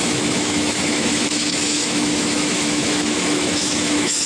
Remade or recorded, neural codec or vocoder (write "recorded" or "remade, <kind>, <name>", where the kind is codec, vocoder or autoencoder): remade, autoencoder, DAC-VAE